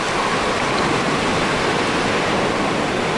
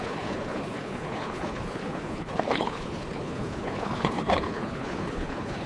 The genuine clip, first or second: first